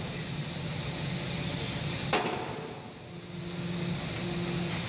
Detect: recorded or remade recorded